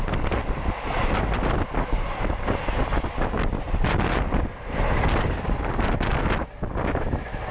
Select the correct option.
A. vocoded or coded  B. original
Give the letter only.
B